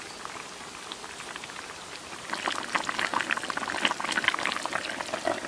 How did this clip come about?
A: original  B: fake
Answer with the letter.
A